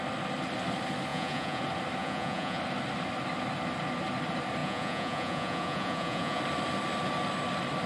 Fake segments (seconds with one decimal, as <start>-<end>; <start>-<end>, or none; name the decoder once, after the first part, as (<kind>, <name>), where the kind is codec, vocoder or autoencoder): 1.1-1.6 (vocoder, Vocos); 2.0-2.6; 4.6-6.4